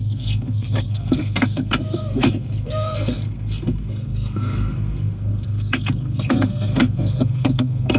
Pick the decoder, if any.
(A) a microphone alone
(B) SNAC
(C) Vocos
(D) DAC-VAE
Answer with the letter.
B